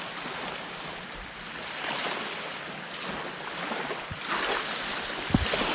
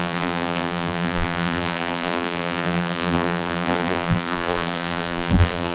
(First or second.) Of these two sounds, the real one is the first